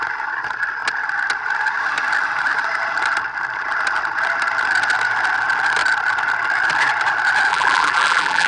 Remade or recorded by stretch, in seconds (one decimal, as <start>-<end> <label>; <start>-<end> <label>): 0.0-7.5 recorded; 7.5-8.5 remade